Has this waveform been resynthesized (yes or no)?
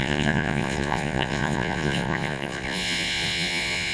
yes